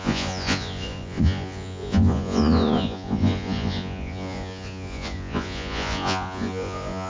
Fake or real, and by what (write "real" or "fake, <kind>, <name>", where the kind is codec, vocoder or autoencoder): fake, vocoder, Vocos